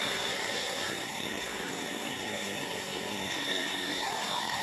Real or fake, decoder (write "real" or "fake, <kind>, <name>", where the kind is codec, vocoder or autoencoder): fake, codec, SNAC